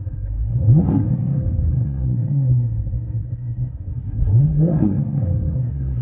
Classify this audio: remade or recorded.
remade